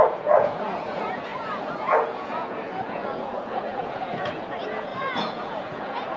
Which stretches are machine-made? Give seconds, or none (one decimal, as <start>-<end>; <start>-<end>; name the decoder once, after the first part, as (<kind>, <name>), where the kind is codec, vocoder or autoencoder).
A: 0.0-6.2 (vocoder, Vocos)

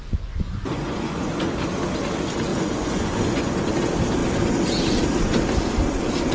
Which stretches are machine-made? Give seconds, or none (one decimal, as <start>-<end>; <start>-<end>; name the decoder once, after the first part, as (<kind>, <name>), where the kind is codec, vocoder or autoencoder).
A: 0.0-1.3 (vocoder, Vocos); 2.5-3.7

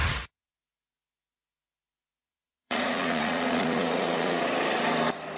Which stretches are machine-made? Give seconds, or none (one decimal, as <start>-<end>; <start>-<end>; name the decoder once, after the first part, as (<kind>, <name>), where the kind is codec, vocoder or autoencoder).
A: 0.0-0.6 (vocoder, Vocos); 2.2-4.4

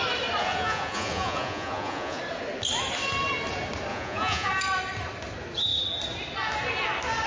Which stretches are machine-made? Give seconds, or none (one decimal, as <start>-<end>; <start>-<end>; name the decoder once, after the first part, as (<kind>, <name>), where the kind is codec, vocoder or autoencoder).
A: 0.4-2.2 (vocoder, Vocos); 3.9-4.5

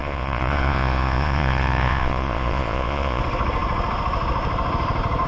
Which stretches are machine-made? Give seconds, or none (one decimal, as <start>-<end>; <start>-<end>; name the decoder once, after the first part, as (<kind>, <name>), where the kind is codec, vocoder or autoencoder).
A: 0.0-3.2 (vocoder, Vocos)

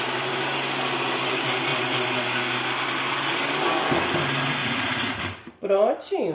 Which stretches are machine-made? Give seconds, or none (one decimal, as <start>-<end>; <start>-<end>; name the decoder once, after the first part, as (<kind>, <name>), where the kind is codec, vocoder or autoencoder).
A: 4.6-5.2 (vocoder, Vocos)

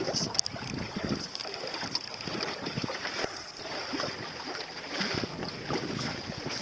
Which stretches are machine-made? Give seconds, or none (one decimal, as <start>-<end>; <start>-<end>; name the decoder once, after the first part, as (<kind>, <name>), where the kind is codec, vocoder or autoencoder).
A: none

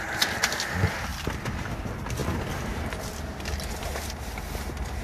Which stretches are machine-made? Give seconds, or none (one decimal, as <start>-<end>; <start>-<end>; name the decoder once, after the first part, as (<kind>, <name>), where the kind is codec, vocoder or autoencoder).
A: none